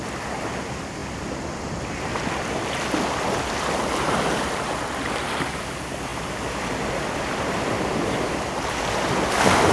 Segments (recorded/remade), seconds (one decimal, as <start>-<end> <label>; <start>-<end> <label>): 0.0-9.7 recorded